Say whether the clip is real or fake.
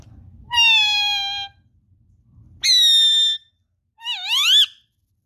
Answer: real